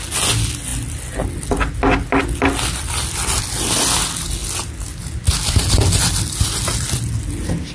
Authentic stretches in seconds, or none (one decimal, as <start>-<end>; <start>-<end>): 0.0-7.7